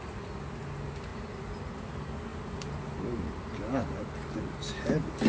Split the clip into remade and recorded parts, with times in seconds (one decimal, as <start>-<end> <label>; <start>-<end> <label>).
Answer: 0.0-5.3 recorded